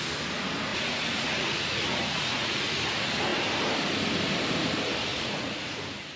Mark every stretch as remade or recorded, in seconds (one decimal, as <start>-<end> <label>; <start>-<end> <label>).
0.0-0.7 recorded; 0.7-2.7 remade; 2.7-5.1 recorded; 5.1-5.8 remade; 5.8-6.2 recorded